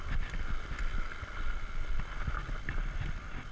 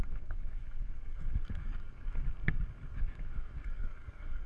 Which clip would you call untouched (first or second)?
first